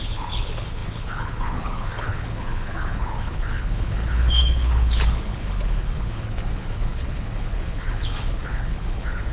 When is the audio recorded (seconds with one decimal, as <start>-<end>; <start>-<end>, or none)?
none